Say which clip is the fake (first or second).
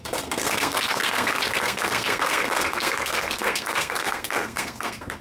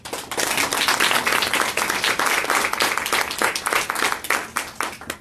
first